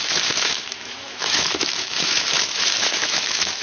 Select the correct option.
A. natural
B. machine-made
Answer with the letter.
B